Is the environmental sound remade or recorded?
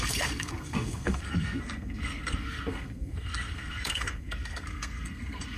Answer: remade